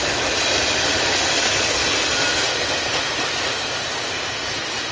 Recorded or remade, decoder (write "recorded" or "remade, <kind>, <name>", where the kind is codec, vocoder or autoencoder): recorded